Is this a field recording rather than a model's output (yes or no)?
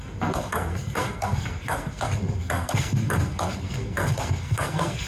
no